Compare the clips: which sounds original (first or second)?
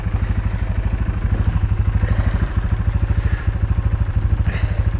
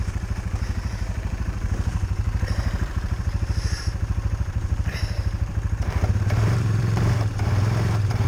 first